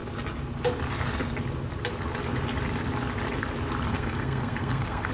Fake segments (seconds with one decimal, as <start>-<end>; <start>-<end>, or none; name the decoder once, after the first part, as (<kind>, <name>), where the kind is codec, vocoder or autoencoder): 3.9-5.1 (codec, SNAC)